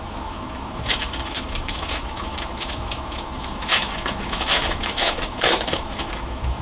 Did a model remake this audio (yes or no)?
yes